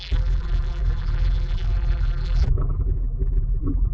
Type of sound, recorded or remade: remade